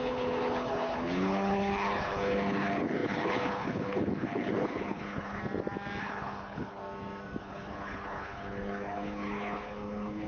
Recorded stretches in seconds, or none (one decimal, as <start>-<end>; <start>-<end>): 5.4-6.0; 6.8-7.4